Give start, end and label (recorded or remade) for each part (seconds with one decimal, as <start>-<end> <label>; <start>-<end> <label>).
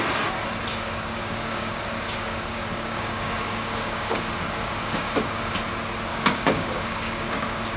0.0-0.7 recorded; 0.7-5.4 remade; 5.4-6.1 recorded; 6.1-7.8 remade